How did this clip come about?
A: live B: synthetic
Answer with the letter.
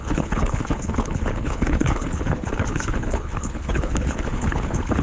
B